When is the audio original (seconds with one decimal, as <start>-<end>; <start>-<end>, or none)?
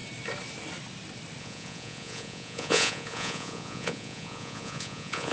0.0-1.4